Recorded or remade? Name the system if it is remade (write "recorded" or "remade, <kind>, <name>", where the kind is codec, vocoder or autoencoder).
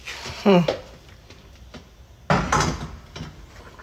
recorded